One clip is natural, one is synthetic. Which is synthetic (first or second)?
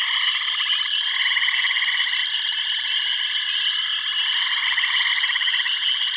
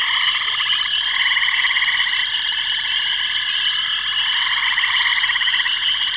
second